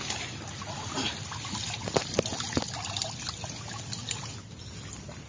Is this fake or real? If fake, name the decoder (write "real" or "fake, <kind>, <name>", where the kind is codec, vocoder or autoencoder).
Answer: real